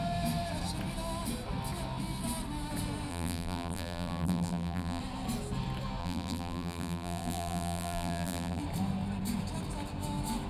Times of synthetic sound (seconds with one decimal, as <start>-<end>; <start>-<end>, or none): 3.1-5.0; 6.0-8.6